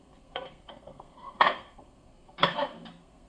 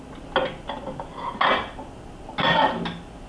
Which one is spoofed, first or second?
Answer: first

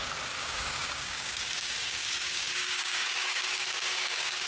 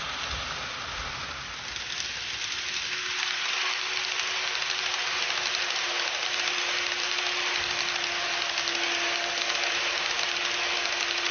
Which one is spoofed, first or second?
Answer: first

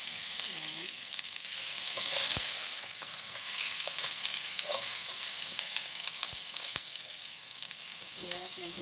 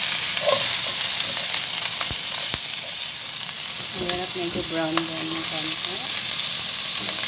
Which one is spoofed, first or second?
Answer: first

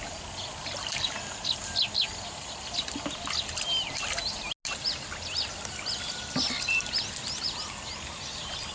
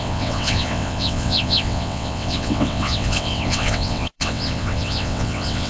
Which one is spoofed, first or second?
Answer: second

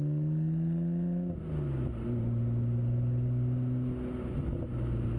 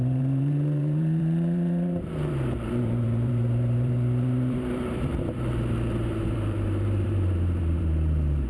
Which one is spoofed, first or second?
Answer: second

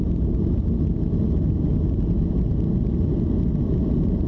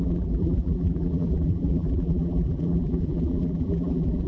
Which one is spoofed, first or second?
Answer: second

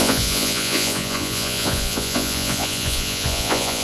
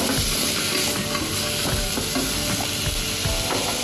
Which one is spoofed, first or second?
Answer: first